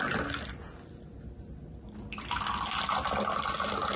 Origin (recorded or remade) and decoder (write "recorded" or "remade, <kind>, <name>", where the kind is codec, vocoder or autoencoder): recorded